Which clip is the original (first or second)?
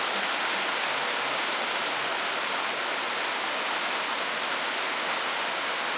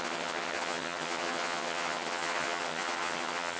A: first